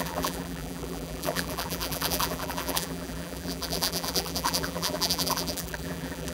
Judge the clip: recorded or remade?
remade